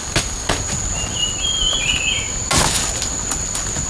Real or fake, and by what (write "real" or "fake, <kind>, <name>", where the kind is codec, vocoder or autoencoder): real